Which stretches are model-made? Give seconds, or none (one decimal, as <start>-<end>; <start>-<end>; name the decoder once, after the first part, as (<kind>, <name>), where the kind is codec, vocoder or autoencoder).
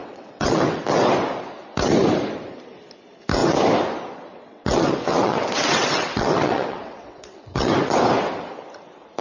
0.0-0.8 (vocoder, WaveNeXt); 4.5-7.7